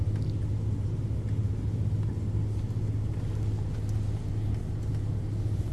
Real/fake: real